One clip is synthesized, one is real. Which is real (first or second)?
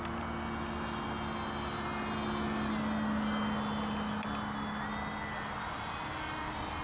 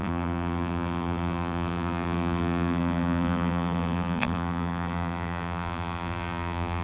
first